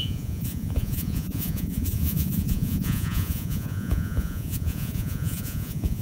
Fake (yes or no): yes